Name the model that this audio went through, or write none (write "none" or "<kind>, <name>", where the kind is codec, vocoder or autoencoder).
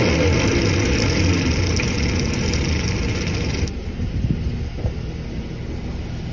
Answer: none